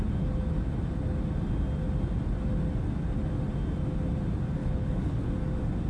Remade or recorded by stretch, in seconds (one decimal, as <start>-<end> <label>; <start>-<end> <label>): 0.0-4.6 recorded; 4.6-5.3 remade; 5.3-5.9 recorded